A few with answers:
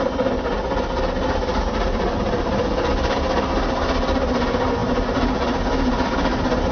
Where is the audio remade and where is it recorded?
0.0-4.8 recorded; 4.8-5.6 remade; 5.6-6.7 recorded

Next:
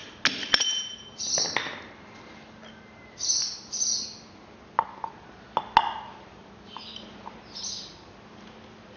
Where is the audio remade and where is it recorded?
0.0-9.0 recorded

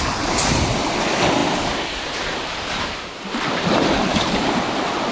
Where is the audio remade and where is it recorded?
0.0-5.1 recorded

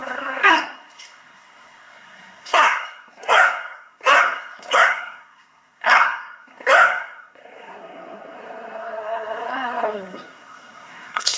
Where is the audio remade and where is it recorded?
0.0-11.4 remade